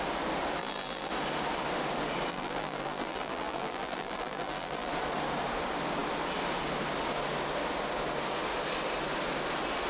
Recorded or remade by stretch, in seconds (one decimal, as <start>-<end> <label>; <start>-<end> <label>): 0.0-0.6 recorded; 0.6-1.1 remade; 1.1-2.3 recorded; 2.3-4.9 remade; 4.9-9.9 recorded